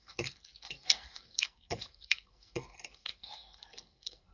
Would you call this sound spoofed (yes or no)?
yes